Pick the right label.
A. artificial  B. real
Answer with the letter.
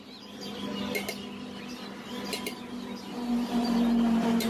B